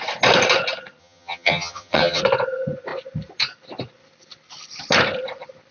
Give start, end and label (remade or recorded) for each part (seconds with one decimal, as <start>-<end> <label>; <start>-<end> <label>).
0.0-1.0 recorded; 1.0-2.2 remade; 2.2-5.7 recorded